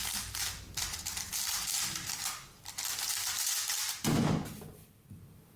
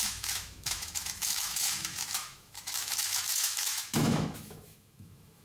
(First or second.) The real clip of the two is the first